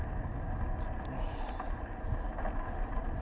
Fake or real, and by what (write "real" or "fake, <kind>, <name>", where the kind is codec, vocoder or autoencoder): real